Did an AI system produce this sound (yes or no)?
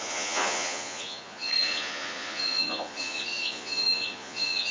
yes